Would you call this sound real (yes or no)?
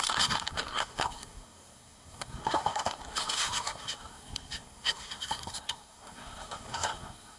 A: no